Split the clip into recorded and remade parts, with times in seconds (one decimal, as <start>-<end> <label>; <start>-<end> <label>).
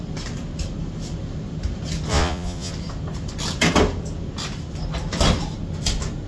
0.0-2.1 recorded; 2.1-2.7 remade; 2.7-6.3 recorded